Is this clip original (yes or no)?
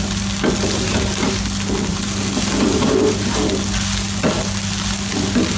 yes